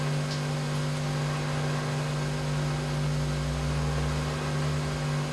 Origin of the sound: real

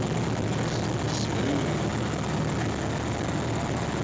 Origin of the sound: real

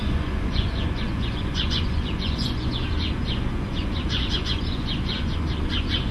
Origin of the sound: fake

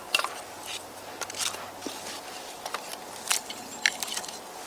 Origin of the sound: real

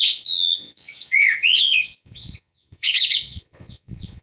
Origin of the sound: fake